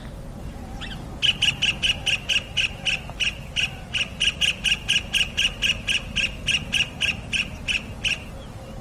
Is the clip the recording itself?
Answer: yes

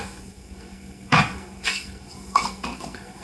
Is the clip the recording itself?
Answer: no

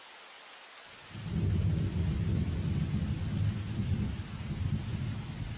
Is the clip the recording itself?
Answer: yes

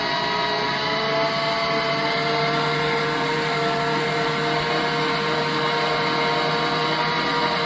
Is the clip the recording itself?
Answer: yes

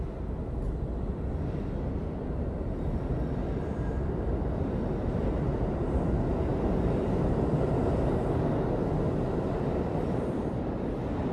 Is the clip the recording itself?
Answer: yes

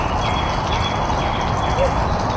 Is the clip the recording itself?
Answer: yes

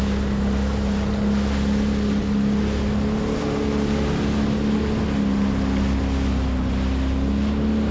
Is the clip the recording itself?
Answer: yes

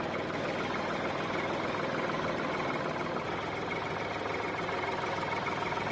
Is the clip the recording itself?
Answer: yes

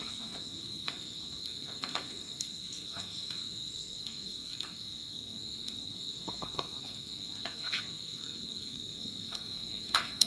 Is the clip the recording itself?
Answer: no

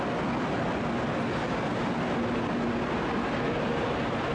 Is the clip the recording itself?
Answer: yes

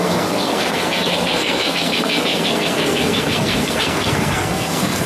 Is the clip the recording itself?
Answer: no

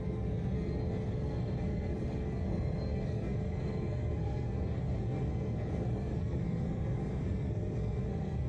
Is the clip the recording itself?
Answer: no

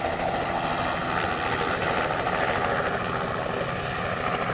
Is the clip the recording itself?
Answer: yes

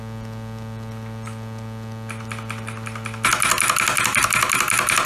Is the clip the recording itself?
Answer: yes